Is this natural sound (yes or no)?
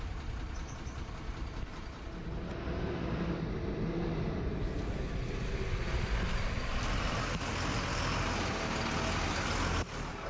yes